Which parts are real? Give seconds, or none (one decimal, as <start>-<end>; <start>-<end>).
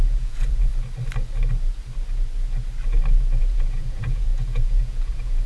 0.7-3.4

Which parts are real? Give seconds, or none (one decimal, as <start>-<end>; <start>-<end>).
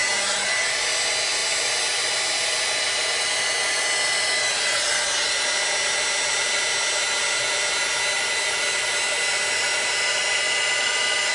0.0-11.3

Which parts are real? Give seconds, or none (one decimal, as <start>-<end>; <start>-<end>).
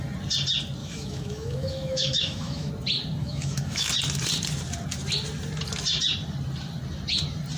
0.0-0.8; 2.7-3.2; 3.9-7.6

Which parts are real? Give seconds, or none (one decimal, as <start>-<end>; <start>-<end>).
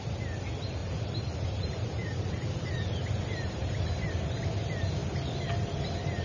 0.0-0.8; 4.1-6.2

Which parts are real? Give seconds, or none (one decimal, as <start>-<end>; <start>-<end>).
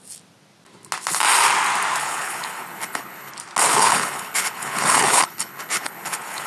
0.0-2.0; 3.3-3.7